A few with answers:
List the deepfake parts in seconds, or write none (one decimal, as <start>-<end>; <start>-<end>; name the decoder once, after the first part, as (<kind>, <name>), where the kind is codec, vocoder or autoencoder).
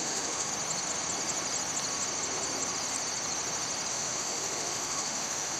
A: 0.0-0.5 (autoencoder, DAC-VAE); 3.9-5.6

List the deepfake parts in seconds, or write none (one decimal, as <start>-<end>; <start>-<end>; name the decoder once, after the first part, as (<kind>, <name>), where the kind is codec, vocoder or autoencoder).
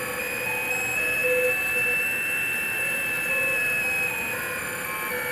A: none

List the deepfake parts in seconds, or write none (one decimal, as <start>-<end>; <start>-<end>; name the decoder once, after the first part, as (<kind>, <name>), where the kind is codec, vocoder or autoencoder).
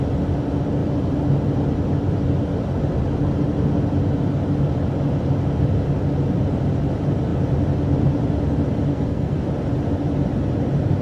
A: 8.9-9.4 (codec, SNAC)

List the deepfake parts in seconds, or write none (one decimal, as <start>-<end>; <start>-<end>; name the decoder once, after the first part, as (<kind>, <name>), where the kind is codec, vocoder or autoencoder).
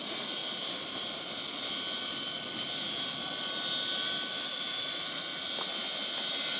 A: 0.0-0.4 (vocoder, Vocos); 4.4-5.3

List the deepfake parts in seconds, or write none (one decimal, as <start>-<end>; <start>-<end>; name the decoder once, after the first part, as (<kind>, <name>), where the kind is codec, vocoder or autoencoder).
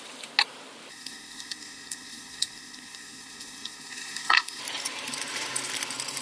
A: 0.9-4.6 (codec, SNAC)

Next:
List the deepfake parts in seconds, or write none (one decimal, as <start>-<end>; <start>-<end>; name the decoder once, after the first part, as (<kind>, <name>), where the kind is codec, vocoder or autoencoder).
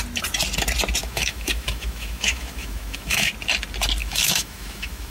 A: 1.0-3.3 (autoencoder, DAC-VAE); 4.0-5.1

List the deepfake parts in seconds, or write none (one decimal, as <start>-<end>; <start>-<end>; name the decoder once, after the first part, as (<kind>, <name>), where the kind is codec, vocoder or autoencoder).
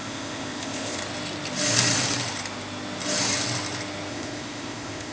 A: 0.0-1.0 (codec, ZipCodec); 4.1-5.1